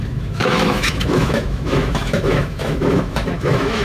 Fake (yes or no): yes